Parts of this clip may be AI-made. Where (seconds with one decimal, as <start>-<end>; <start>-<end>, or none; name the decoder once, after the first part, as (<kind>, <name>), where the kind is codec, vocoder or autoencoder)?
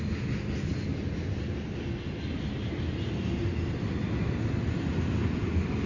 none